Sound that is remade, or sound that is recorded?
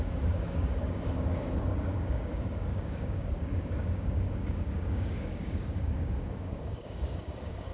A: remade